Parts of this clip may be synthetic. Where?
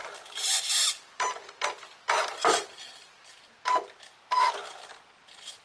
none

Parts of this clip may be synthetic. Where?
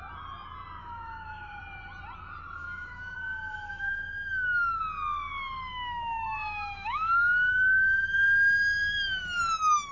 0.8-1.6 (autoencoder, DAC-VAE); 2.6-4.8; 5.7-9.4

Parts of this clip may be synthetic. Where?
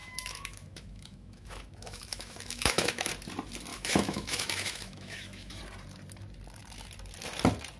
0.0-3.1 (autoencoder, DAC-VAE); 3.7-5.6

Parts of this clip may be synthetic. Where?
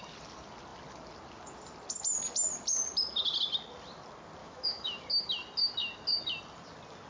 4.4-5.0 (autoencoder, DAC-VAE)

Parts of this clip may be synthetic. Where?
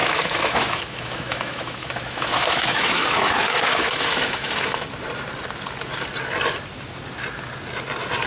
0.0-4.8 (autoencoder, DAC-VAE)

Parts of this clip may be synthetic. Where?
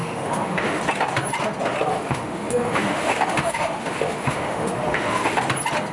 0.0-0.8 (autoencoder, DAC-VAE); 1.9-5.4